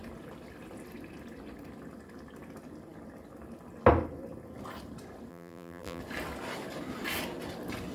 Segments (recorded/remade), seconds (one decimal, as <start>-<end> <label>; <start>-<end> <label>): 0.0-5.3 recorded; 5.3-6.0 remade; 6.0-7.9 recorded

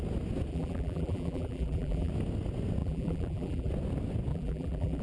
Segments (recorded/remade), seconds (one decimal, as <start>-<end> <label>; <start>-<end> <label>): 0.0-0.5 recorded; 0.5-2.1 remade; 2.1-2.8 recorded; 2.8-3.7 remade; 3.7-4.3 recorded; 4.3-5.0 remade

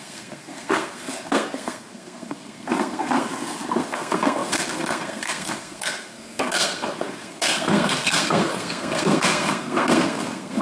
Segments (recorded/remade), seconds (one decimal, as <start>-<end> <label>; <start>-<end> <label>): 0.0-10.6 remade

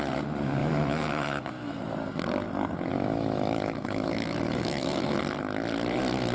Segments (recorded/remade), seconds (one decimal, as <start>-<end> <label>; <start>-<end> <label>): 0.0-0.6 recorded; 0.6-1.8 remade; 1.8-2.9 recorded; 2.9-5.2 remade; 5.2-6.3 recorded

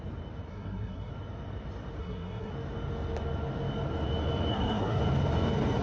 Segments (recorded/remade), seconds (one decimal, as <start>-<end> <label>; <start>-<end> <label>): 0.0-0.5 recorded; 0.5-1.1 remade; 1.1-2.0 recorded; 2.0-2.5 remade; 2.5-4.5 recorded; 4.5-5.0 remade; 5.0-5.8 recorded

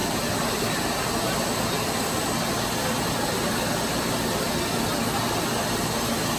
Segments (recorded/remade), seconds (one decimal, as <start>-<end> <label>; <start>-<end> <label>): 0.0-6.4 recorded